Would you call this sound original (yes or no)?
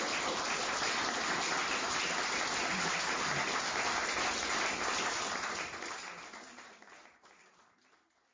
yes